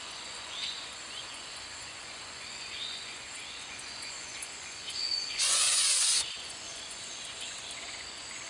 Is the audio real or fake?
fake